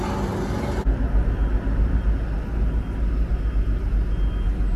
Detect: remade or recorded recorded